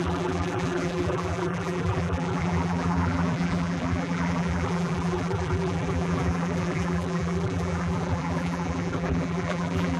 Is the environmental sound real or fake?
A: fake